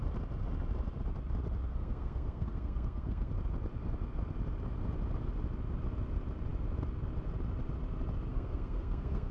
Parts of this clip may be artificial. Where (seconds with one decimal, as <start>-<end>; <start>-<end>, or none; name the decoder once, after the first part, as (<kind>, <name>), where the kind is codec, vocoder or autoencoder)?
1.7-3.3 (codec, SNAC); 8.3-9.3